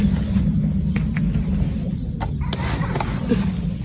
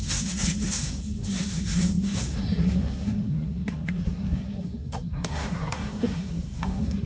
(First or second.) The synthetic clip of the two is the second